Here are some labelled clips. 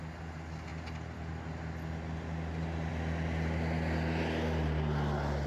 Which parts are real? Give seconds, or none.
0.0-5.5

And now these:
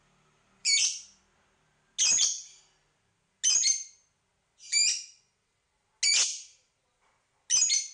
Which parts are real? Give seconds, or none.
0.0-0.6; 1.2-7.9

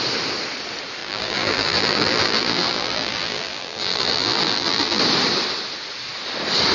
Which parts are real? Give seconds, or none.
0.0-1.0; 5.0-6.7

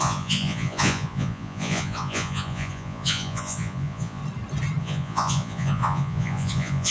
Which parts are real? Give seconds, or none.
4.2-4.8

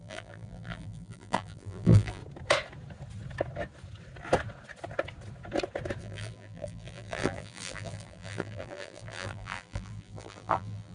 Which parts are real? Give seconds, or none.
2.2-6.0